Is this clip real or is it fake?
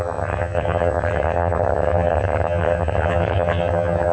fake